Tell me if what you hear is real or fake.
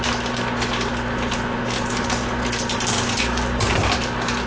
real